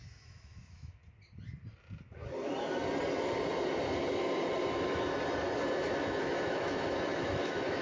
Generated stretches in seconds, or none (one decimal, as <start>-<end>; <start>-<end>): 0.0-1.0; 5.7-7.8